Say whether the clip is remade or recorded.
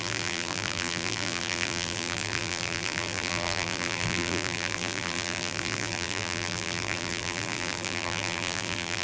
remade